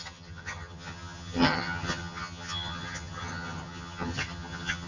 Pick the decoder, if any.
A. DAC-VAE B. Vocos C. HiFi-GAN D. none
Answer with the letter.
C